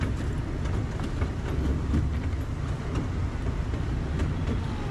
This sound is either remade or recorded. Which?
recorded